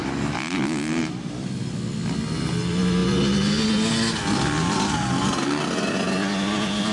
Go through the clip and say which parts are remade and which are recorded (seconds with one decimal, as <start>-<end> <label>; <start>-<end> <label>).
0.0-6.9 recorded